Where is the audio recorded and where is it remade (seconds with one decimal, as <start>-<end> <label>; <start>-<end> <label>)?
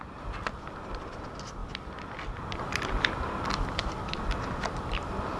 0.0-5.4 recorded